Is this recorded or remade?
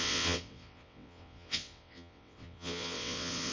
remade